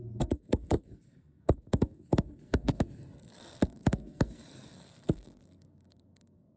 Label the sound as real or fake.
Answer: fake